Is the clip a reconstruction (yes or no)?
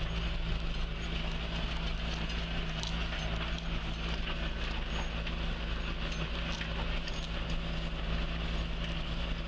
no